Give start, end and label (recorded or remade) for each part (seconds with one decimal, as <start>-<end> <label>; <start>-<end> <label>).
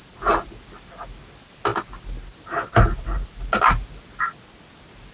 0.0-5.1 recorded